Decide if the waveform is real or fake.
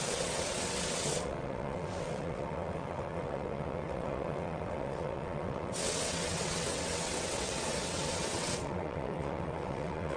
fake